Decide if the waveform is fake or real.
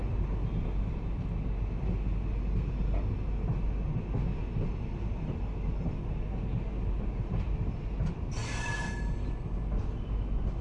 real